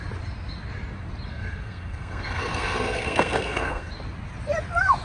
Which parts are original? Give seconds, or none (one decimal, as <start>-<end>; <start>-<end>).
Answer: 0.0-1.3; 3.9-5.0